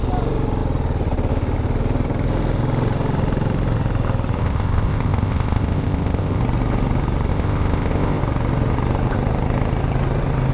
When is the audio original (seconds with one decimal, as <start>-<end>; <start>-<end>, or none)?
0.0-4.4; 6.4-7.3; 8.2-10.5